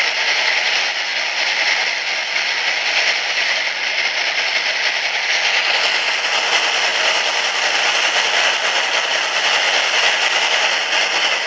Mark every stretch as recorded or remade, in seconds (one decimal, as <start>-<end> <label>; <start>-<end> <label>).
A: 0.0-11.5 recorded